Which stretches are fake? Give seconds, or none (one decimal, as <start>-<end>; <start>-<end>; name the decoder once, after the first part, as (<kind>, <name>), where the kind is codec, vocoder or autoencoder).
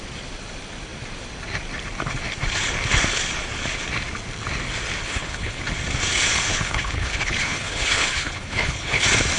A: 5.0-5.6 (codec, HILCodec); 6.5-9.0